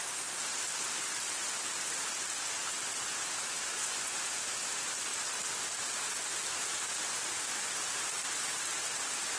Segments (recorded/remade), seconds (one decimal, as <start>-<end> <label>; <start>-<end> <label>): 0.0-3.7 recorded; 3.7-4.2 remade; 4.2-9.4 recorded